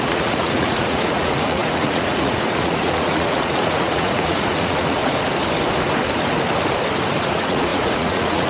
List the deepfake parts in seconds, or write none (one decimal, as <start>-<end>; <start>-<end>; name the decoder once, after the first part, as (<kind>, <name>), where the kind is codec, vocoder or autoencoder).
0.0-5.0 (vocoder, Vocos); 7.2-8.5